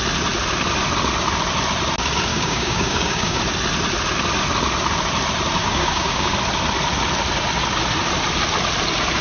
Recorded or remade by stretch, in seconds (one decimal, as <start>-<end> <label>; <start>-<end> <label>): 0.0-2.3 recorded; 2.3-3.4 remade; 3.4-5.6 recorded; 5.6-6.3 remade; 6.3-9.2 recorded